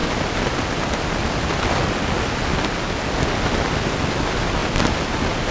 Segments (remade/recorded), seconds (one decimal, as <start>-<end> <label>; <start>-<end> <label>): 0.0-5.5 recorded